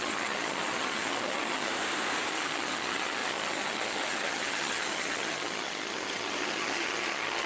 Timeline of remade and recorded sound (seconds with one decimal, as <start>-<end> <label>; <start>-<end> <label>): 0.0-1.7 remade; 1.7-2.3 recorded; 2.3-7.5 remade